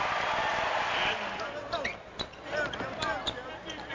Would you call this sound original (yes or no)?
yes